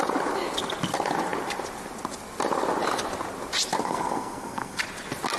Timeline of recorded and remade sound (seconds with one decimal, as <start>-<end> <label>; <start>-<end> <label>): 0.0-3.8 recorded; 3.8-4.8 remade; 4.8-5.4 recorded